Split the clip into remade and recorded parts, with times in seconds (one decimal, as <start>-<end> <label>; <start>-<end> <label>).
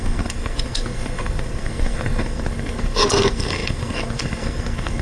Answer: 0.0-5.0 remade